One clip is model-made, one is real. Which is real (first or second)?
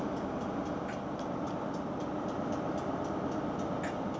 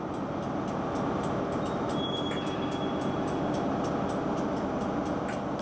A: second